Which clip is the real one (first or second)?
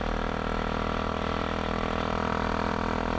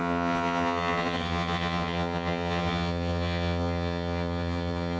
first